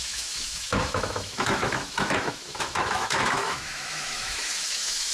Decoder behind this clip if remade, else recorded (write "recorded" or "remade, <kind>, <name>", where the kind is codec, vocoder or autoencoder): remade, autoencoder, DAC-VAE